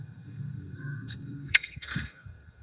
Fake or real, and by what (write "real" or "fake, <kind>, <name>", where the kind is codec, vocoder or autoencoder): fake, codec, SNAC